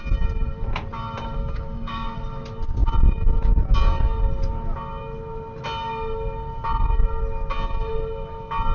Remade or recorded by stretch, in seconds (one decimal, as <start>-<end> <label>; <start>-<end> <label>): 0.0-1.4 recorded; 1.4-2.2 remade; 2.2-8.7 recorded